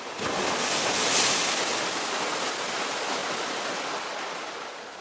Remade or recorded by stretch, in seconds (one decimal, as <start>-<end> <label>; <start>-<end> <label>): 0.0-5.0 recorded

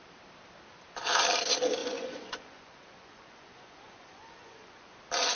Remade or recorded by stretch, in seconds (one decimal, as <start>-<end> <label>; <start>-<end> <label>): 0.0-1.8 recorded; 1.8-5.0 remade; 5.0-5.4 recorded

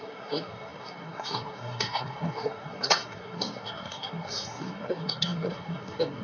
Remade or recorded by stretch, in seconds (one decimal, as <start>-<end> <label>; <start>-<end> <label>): 0.0-6.2 remade

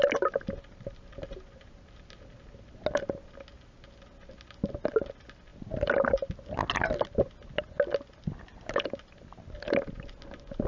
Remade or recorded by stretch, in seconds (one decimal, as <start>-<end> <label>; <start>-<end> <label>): 0.0-10.7 recorded

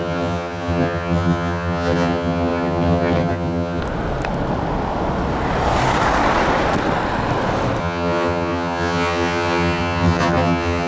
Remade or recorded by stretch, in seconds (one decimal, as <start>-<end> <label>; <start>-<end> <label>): 0.0-3.8 remade; 3.8-7.8 recorded; 7.8-10.9 remade

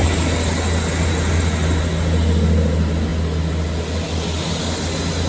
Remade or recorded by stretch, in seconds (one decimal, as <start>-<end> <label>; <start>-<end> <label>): 0.0-5.3 recorded

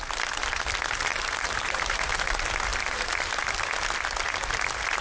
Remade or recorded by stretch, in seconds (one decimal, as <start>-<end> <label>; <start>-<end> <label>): 0.0-1.1 recorded; 1.1-2.1 remade; 2.1-2.7 recorded; 2.7-3.4 remade; 3.4-5.0 recorded

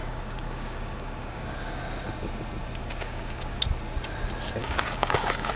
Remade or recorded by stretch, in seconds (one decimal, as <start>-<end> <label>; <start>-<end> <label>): 0.0-1.8 remade; 1.8-2.8 recorded; 2.8-3.6 remade; 3.6-4.6 recorded; 4.6-5.6 remade